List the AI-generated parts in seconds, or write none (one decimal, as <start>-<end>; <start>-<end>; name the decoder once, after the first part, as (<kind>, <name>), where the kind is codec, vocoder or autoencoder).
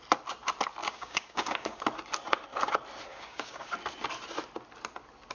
0.8-1.8 (codec, DAC); 3.1-3.7